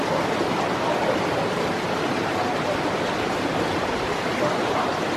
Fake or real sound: real